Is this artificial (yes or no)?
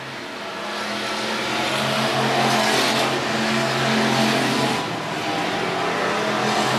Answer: no